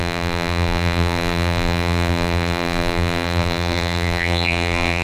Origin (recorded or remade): remade